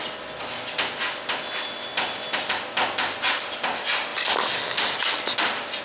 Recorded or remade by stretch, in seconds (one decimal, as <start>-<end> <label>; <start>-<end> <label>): 0.0-1.9 recorded; 1.9-2.4 remade; 2.4-5.8 recorded